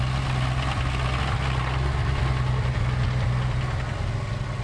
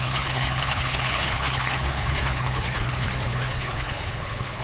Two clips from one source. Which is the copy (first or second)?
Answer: second